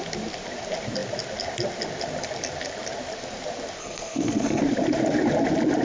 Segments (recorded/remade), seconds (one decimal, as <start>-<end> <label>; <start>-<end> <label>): 0.0-3.8 recorded; 3.8-4.6 remade; 4.6-5.8 recorded